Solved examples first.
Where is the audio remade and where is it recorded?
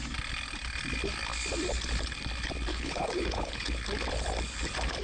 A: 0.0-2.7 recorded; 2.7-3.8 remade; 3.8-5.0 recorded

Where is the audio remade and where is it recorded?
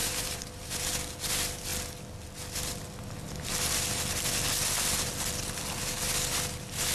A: 0.0-0.9 remade; 0.9-6.9 recorded